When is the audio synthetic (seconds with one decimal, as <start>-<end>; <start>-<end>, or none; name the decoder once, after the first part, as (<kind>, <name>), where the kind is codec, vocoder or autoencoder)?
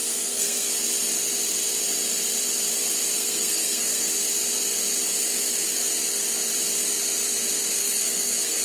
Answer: 0.0-0.7 (codec, SNAC); 3.2-4.1; 7.8-8.6